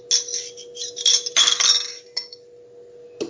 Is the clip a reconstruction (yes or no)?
no